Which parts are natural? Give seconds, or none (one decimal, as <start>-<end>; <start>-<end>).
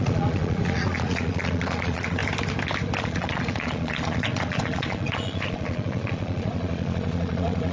2.2-3.0